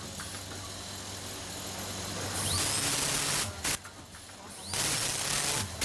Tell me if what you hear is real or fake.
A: real